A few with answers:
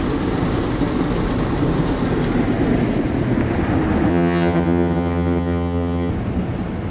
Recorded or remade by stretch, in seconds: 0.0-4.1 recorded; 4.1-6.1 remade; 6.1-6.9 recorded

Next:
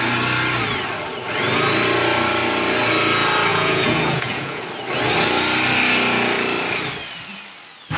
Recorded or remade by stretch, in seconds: 0.0-3.5 recorded; 3.5-4.6 remade; 4.6-8.0 recorded